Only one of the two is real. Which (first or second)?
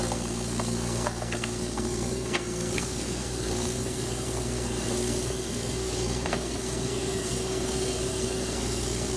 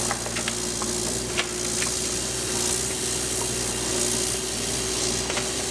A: second